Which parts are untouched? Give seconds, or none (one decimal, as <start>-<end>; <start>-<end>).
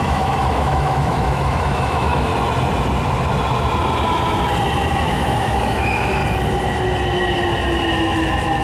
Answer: 2.3-4.9; 6.2-7.9